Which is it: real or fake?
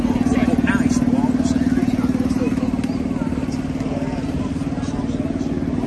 real